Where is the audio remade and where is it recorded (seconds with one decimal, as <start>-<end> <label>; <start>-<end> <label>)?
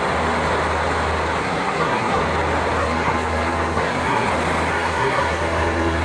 0.0-1.4 recorded; 1.4-2.2 remade; 2.2-2.8 recorded; 2.8-4.3 remade; 4.3-4.7 recorded; 4.7-6.0 remade